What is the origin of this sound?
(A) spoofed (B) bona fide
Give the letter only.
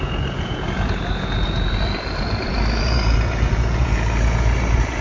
A